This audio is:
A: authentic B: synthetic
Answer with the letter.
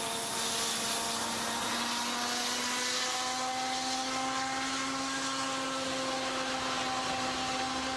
A